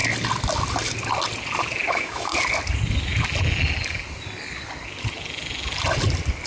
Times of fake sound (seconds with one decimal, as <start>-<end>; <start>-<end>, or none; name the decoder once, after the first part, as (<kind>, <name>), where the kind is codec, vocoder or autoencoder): 1.9-2.3 (autoencoder, DAC-VAE)